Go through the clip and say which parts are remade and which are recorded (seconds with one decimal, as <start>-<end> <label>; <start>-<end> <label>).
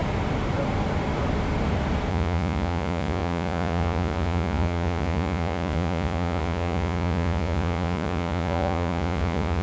0.0-2.1 recorded; 2.1-9.6 remade